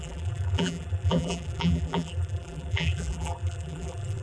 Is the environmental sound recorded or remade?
remade